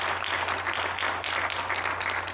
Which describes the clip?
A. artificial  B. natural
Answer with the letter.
B